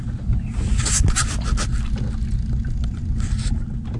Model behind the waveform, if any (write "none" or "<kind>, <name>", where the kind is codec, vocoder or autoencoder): none